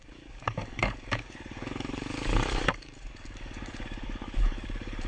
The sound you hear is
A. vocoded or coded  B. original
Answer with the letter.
A